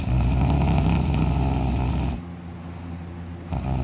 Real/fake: real